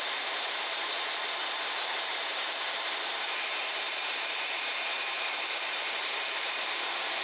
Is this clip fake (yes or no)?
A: yes